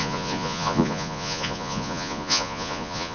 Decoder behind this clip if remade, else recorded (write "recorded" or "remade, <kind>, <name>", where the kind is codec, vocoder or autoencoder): remade, vocoder, Vocos